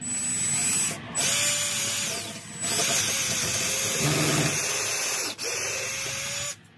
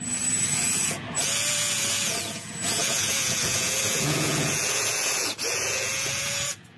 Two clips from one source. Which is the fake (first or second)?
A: second